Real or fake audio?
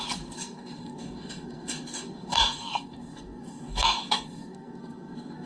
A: fake